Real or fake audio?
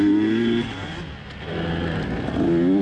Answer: real